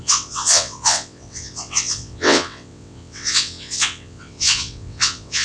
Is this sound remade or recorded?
remade